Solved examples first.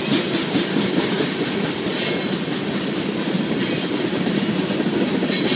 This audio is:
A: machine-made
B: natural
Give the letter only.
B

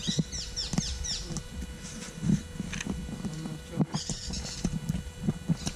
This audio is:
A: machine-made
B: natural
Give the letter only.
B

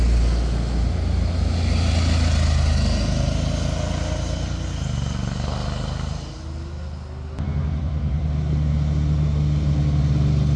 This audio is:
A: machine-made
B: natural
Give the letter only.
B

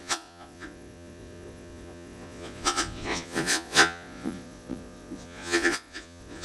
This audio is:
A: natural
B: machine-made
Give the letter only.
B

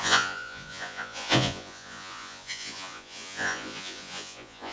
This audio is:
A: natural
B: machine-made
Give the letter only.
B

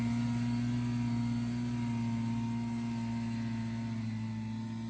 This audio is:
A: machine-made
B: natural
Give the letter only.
B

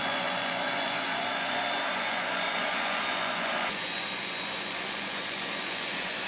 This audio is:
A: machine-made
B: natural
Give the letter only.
A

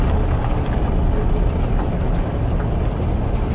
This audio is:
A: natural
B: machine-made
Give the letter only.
A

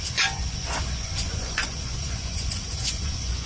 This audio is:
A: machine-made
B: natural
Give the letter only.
A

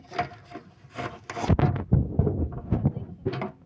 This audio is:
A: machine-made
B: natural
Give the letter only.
B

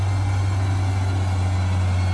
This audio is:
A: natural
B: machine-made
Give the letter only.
A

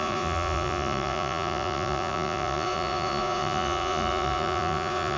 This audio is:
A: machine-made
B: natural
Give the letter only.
A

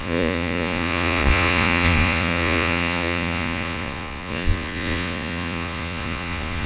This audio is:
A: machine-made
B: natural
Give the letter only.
A